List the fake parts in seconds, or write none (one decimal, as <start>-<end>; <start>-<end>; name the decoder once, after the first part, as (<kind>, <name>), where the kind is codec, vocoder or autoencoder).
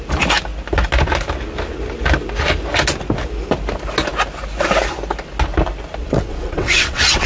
6.0-7.3 (vocoder, WaveNeXt)